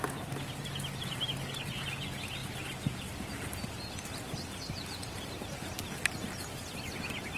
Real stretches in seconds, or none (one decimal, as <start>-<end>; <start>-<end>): 0.0-7.4